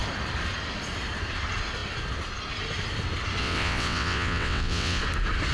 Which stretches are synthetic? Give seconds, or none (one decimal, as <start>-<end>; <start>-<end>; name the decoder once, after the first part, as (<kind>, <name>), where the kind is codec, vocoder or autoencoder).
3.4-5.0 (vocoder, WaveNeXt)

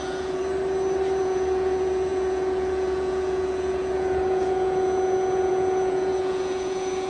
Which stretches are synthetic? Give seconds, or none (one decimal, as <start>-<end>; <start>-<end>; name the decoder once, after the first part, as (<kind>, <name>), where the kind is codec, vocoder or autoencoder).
0.0-0.4 (vocoder, Vocos); 1.2-7.1

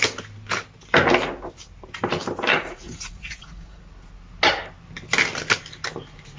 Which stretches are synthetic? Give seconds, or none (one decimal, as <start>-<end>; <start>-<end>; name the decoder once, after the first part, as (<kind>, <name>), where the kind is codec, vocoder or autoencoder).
2.5-3.8 (vocoder, Vocos)